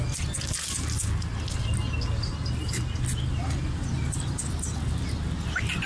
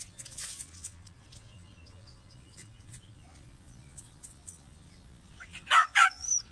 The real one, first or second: first